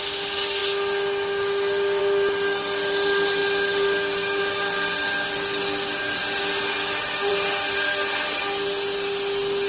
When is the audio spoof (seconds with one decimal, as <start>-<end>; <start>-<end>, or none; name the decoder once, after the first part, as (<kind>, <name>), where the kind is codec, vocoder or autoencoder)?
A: none